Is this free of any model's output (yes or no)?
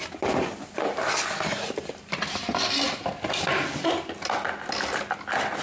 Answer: yes